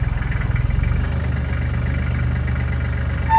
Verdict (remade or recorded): recorded